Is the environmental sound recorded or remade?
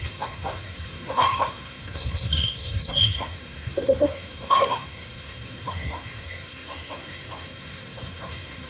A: remade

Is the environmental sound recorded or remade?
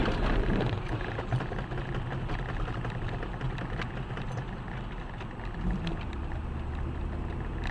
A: recorded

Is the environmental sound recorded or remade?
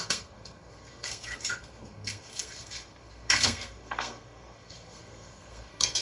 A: remade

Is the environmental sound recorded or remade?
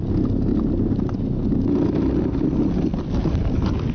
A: recorded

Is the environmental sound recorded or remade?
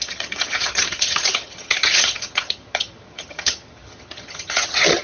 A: remade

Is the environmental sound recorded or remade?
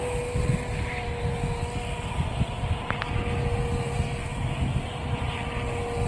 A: recorded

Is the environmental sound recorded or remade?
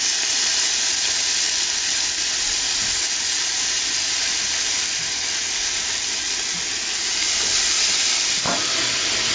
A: recorded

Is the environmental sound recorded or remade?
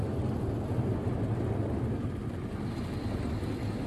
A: recorded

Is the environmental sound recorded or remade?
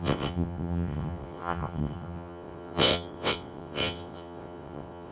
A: remade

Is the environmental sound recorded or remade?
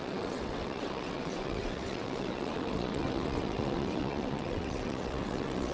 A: remade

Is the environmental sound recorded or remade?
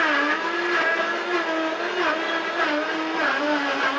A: recorded